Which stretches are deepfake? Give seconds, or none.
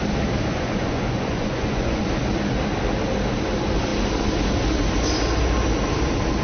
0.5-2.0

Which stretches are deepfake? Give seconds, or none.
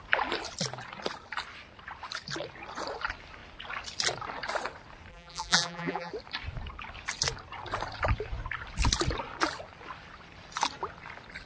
5.1-6.1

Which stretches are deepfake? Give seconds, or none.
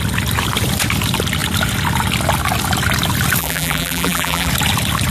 3.4-4.5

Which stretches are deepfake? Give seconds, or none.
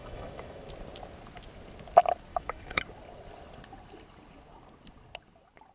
0.0-0.7; 2.3-2.8